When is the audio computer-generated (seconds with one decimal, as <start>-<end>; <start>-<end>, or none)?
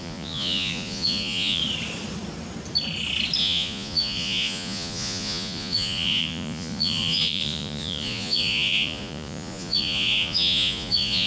0.0-1.6; 3.4-11.3